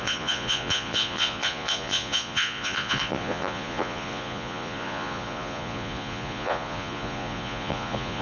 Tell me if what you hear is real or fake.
fake